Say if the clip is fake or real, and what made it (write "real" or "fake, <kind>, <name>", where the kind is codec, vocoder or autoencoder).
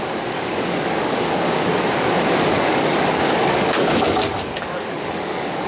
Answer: fake, codec, DAC